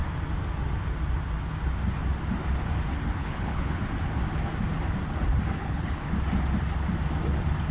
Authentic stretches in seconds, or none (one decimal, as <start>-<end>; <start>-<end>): 0.0-3.2; 3.8-5.6; 6.1-7.7